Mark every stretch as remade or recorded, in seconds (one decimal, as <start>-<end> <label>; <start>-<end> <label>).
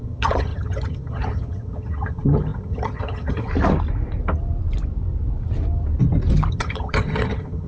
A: 0.0-3.5 remade; 3.5-6.5 recorded; 6.5-7.7 remade